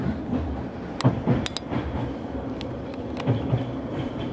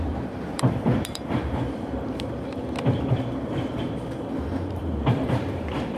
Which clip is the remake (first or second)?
second